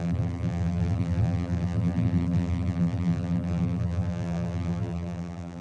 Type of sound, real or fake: fake